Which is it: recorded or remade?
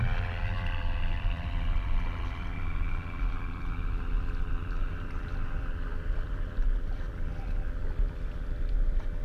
remade